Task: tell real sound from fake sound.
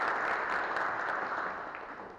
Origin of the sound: real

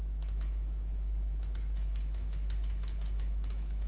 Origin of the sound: fake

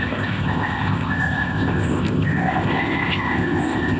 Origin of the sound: fake